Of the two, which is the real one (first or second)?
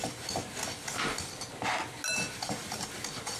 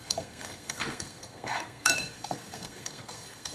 first